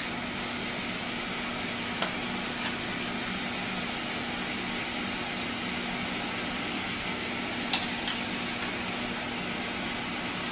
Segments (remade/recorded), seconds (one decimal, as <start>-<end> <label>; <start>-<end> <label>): 0.0-6.7 recorded; 6.7-7.3 remade; 7.3-10.5 recorded